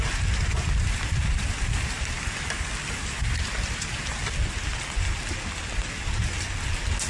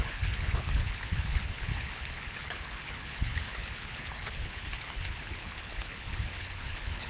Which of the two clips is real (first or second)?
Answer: first